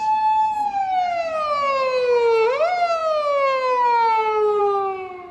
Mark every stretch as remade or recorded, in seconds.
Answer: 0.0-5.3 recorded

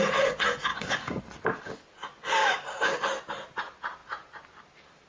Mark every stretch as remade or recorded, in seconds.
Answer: 0.0-0.7 recorded; 0.7-1.2 remade; 1.2-2.4 recorded; 2.4-2.9 remade; 2.9-5.1 recorded

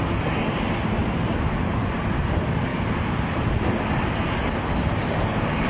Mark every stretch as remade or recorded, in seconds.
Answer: 0.0-1.0 recorded; 1.0-1.8 remade; 1.8-2.7 recorded; 2.7-3.7 remade; 3.7-5.7 recorded